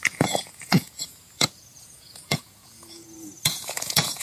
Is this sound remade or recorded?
remade